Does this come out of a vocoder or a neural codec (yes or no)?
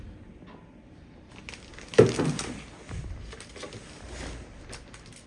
no